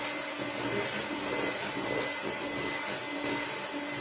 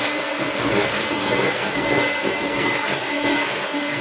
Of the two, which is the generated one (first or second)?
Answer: second